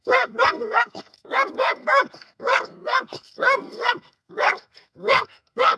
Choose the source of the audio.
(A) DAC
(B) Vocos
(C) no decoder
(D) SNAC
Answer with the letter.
D